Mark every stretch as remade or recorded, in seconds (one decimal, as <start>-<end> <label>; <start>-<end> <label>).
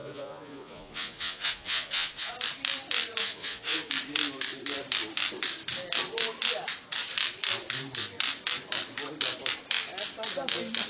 0.0-2.3 remade; 2.3-3.2 recorded; 3.2-3.9 remade; 3.9-10.9 recorded